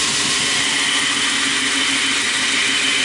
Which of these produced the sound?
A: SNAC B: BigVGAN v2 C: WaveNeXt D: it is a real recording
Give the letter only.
D